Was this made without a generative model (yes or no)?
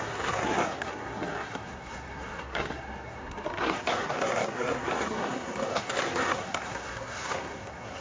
no